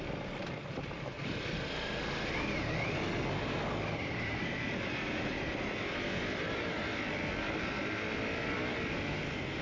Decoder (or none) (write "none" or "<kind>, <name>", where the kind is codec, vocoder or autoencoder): none